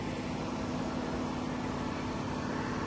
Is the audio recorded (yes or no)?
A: yes